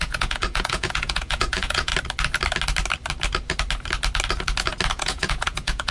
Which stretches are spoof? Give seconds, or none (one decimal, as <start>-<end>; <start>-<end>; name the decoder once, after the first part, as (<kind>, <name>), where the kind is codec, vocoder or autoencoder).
0.0-1.9 (vocoder, Vocos); 4.9-5.9

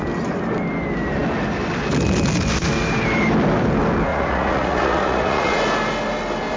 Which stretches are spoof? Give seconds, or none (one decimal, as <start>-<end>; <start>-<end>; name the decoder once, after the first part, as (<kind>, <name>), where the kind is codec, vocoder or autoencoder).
4.1-5.6 (vocoder, Vocos)